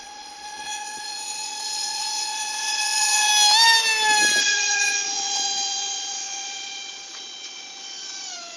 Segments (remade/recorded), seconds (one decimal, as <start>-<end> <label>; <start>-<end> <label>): 0.0-3.3 remade; 3.3-4.4 recorded; 4.4-8.6 remade